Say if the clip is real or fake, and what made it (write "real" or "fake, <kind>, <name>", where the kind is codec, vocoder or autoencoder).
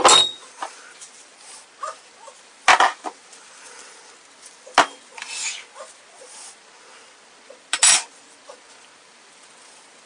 real